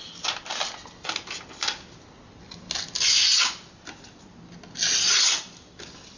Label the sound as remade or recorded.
recorded